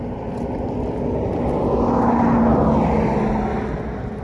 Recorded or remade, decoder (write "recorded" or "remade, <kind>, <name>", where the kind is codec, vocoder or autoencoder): recorded